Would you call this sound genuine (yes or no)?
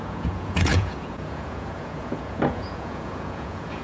no